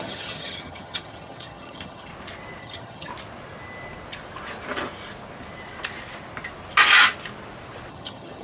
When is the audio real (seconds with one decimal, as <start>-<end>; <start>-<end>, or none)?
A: 2.1-2.6; 3.1-7.9